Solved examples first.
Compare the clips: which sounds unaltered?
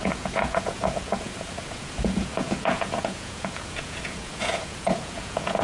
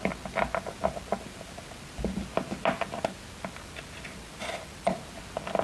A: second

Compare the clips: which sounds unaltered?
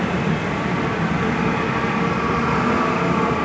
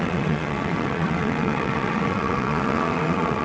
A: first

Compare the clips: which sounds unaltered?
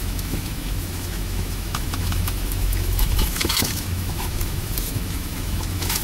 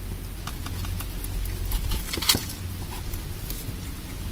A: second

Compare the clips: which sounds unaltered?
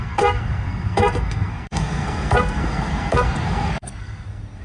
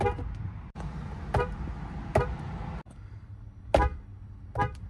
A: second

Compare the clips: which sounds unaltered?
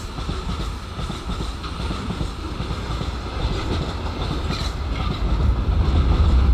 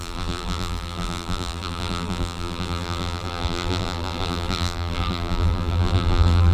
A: first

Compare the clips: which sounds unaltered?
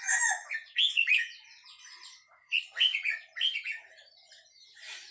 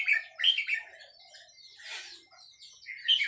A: second